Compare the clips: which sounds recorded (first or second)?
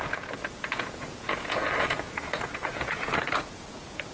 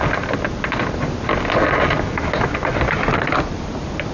second